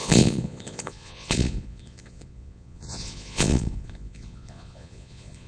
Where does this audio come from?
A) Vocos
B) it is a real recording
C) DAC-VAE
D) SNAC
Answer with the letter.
A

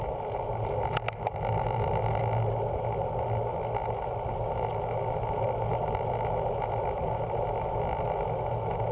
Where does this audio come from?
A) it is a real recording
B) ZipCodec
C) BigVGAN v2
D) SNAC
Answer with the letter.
A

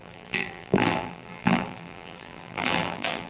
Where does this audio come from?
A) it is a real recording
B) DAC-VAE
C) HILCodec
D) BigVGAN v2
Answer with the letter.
D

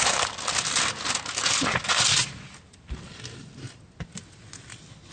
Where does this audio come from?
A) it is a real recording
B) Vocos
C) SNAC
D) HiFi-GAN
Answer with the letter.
A